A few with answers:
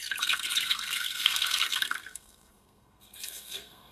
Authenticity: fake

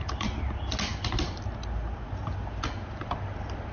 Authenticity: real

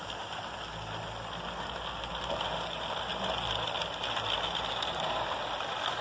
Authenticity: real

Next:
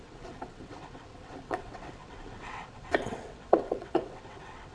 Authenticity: fake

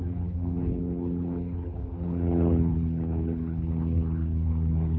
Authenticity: fake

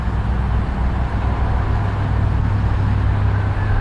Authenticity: real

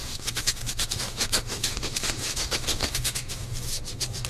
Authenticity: fake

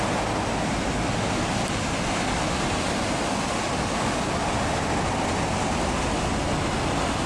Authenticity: real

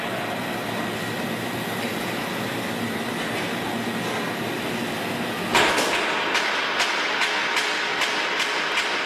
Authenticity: real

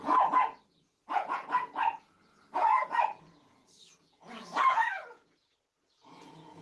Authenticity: fake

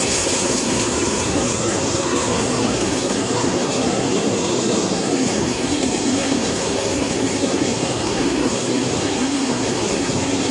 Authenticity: fake